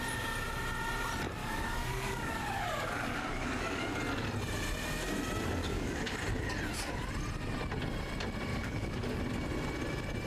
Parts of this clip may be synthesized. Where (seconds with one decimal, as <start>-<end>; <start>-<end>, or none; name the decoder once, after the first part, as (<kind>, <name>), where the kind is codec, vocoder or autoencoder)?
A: 1.4-4.0 (codec, DAC); 5.6-6.1; 8.5-9.2